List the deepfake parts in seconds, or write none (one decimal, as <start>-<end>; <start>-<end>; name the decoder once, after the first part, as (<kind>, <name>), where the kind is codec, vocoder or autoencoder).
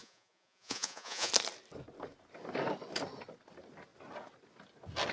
0.0-1.3 (vocoder, Vocos)